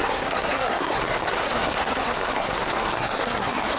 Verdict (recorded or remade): remade